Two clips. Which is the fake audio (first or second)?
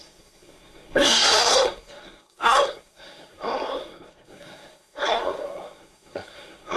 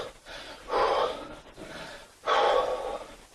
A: first